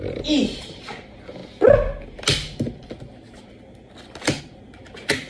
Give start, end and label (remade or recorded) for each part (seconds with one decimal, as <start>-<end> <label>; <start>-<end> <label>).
0.0-5.3 recorded